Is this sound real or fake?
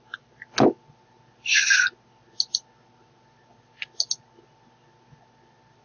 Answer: real